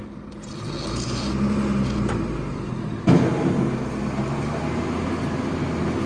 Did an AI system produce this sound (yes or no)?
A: no